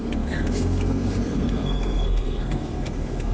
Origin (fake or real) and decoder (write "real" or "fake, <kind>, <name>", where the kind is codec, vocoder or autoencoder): fake, codec, SNAC